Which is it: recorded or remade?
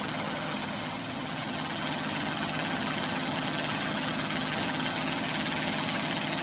remade